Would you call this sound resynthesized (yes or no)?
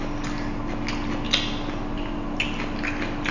no